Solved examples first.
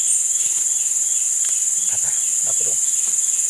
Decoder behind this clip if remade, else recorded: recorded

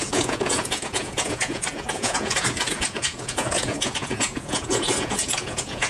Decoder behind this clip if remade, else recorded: remade, vocoder, Vocos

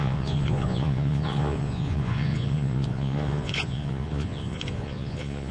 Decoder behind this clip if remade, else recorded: remade, vocoder, Vocos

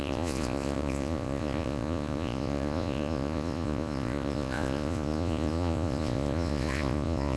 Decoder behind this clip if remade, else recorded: remade, vocoder, Vocos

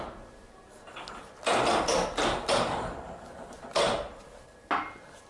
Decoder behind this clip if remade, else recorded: recorded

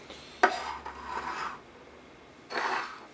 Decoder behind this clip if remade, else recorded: recorded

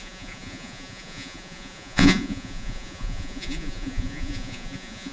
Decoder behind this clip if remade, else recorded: remade, vocoder, Vocos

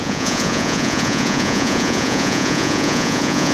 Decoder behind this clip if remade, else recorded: remade, vocoder, Vocos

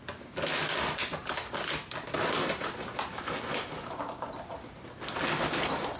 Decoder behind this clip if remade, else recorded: recorded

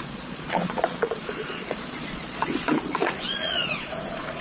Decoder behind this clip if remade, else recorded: remade, vocoder, Vocos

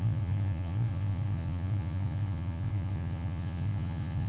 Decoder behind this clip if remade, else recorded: remade, vocoder, Vocos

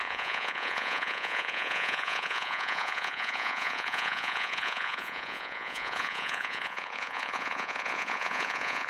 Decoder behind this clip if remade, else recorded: remade, vocoder, Vocos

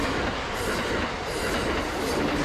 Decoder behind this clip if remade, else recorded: recorded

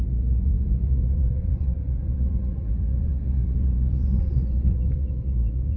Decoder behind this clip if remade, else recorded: remade, vocoder, Vocos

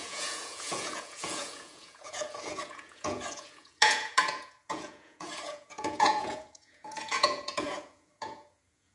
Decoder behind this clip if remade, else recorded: remade, vocoder, Vocos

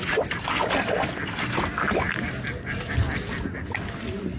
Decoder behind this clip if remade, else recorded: recorded